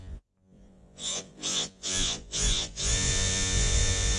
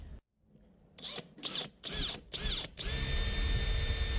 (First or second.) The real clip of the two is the second